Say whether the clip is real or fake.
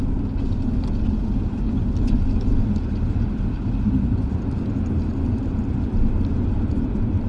real